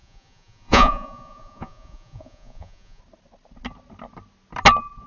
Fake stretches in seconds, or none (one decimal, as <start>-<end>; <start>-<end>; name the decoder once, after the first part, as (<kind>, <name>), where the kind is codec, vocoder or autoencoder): 0.0-3.0 (vocoder, Vocos)